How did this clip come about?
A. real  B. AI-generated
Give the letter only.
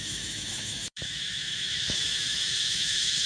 B